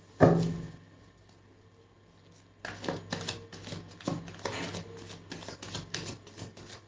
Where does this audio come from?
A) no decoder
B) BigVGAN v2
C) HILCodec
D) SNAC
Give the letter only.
A